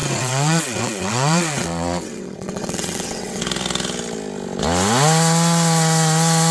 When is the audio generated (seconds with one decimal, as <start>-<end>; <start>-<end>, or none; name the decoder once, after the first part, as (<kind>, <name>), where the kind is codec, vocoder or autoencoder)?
0.0-3.4 (vocoder, WaveNeXt)